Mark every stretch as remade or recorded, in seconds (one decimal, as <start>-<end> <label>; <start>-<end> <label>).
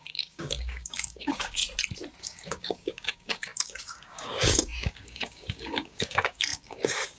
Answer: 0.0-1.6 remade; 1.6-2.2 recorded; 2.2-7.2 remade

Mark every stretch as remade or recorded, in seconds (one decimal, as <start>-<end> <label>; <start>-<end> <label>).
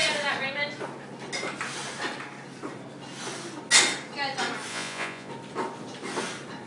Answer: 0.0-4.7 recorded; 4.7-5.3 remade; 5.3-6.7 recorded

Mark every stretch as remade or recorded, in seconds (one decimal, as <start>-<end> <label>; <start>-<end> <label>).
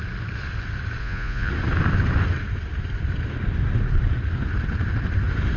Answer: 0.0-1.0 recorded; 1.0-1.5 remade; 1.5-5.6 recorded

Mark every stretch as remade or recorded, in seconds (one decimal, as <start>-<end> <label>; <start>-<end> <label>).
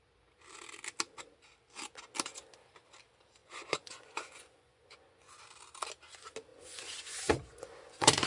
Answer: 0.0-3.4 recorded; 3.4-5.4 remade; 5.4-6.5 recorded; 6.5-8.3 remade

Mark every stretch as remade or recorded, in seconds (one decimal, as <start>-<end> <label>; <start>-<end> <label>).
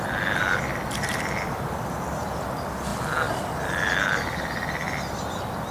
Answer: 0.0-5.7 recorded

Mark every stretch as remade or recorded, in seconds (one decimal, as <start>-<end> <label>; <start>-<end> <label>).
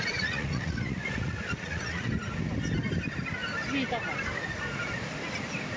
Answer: 0.0-2.1 remade; 2.1-5.8 recorded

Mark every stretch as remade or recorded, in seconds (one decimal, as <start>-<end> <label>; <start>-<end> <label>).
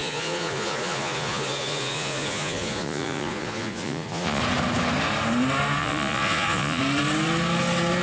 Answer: 0.0-4.4 remade; 4.4-5.8 recorded; 5.8-6.8 remade; 6.8-8.0 recorded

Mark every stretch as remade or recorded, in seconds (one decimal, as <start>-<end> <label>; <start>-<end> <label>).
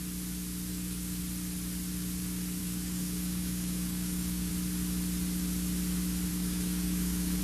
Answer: 0.0-0.7 recorded; 0.7-1.2 remade; 1.2-2.6 recorded; 2.6-4.5 remade; 4.5-6.3 recorded; 6.3-7.4 remade